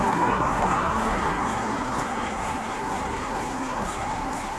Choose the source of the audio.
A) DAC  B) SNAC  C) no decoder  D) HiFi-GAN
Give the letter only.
B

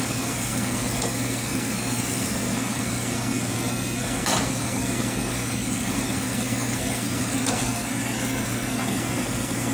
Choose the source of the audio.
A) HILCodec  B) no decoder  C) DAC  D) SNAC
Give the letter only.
D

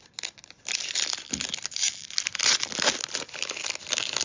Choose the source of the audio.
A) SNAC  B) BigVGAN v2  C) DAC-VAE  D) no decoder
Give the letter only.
D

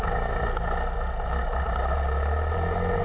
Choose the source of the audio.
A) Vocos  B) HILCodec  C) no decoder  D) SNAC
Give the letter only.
C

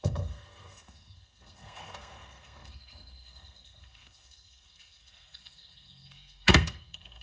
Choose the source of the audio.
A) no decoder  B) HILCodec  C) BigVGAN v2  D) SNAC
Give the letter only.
D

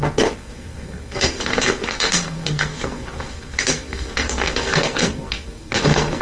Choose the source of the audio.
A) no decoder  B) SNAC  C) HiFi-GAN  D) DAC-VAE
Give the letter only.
B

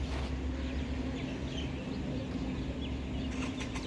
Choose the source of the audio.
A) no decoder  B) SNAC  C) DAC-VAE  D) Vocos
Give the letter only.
A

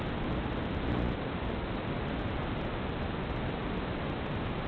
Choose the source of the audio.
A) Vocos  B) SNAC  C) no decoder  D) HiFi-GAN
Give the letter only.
C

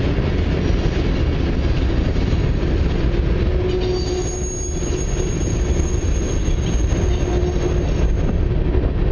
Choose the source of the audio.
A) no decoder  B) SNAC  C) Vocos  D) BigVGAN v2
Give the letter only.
A